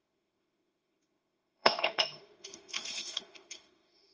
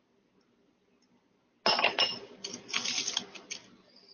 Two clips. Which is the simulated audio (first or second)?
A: first